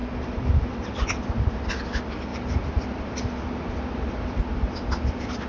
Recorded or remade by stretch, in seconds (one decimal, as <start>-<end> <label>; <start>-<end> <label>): 0.0-1.2 remade; 1.2-2.3 recorded; 2.3-4.4 remade; 4.4-5.5 recorded